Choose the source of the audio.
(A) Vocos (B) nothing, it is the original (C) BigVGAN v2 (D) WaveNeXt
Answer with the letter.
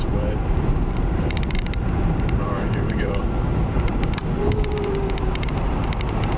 C